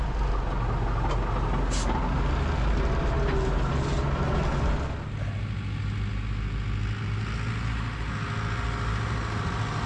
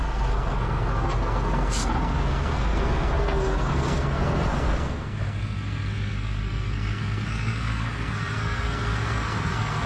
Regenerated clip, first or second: second